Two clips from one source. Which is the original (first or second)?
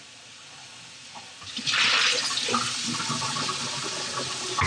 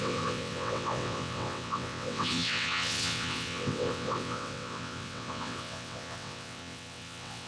first